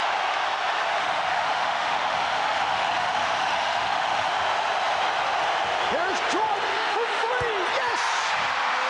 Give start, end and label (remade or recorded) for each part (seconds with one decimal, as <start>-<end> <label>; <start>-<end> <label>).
0.0-1.0 recorded; 1.0-4.3 remade; 4.3-6.7 recorded; 6.7-7.3 remade; 7.3-8.9 recorded